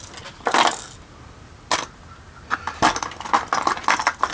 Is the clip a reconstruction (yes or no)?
no